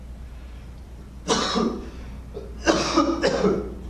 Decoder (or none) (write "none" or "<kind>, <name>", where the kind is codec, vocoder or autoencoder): none